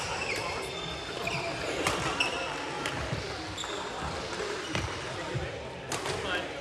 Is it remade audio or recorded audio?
recorded